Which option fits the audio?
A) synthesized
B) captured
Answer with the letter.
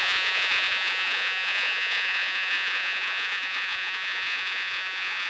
A